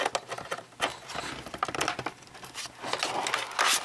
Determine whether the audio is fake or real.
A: real